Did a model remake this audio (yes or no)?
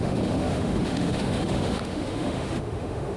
yes